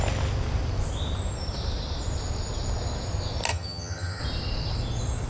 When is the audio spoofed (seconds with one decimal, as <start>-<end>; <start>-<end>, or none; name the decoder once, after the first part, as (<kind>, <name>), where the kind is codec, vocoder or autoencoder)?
3.5-4.2 (vocoder, HiFi-GAN)